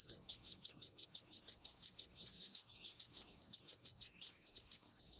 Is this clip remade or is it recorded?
remade